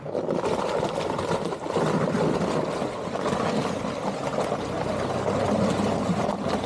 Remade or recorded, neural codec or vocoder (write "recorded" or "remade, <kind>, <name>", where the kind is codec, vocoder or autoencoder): recorded